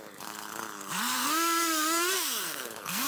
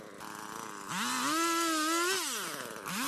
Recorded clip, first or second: second